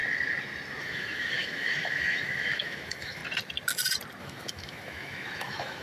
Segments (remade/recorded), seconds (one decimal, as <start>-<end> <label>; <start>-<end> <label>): 0.0-0.8 recorded; 0.8-3.2 remade; 3.2-4.2 recorded; 4.2-5.8 remade